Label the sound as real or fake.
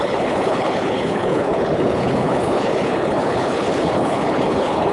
fake